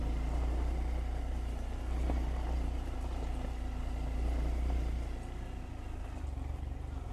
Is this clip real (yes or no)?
yes